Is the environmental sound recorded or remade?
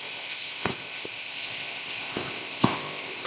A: remade